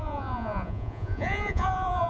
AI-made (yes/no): yes